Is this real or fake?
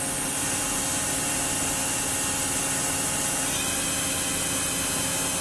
real